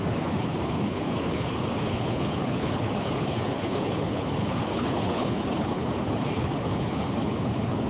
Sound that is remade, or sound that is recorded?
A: remade